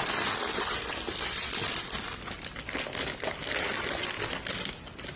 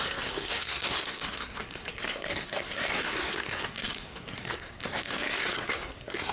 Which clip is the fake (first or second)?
second